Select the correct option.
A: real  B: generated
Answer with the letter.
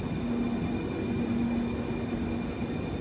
A